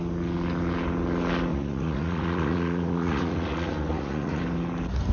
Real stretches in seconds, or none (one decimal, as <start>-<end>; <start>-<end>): 0.0-1.5; 4.4-5.1